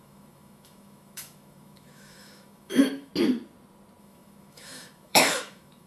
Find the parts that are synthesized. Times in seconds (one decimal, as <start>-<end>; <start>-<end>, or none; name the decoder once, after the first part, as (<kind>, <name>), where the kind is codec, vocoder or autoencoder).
0.0-3.1 (autoencoder, DAC-VAE); 4.0-5.9